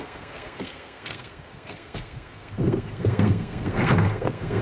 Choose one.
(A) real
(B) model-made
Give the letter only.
B